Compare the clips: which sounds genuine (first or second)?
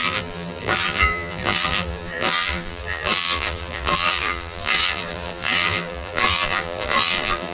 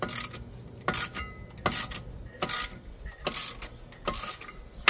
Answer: second